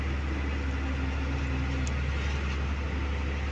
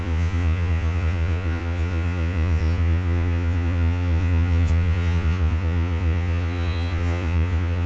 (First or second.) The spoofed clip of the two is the second